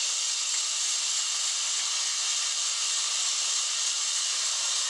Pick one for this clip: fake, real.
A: real